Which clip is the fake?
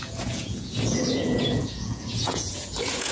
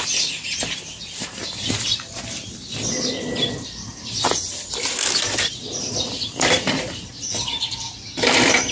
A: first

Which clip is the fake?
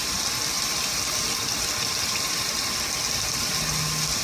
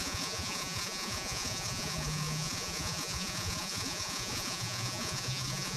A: second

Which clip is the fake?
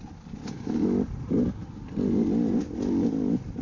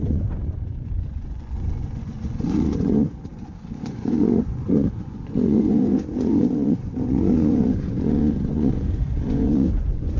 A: second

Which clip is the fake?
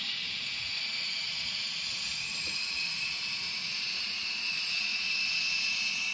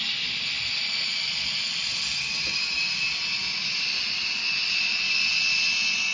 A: first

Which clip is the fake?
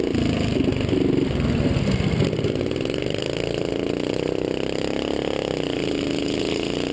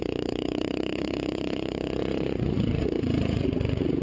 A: second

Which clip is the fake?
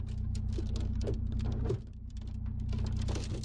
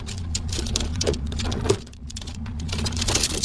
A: second